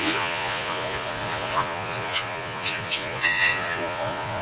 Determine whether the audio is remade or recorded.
remade